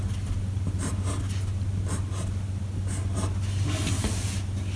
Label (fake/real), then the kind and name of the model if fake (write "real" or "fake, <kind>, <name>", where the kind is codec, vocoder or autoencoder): real